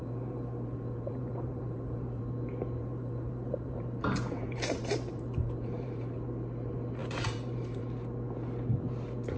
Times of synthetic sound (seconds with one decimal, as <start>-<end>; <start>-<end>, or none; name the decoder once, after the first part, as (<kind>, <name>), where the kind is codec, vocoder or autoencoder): 0.0-2.2 (vocoder, BigVGAN v2); 2.8-6.2; 7.0-7.8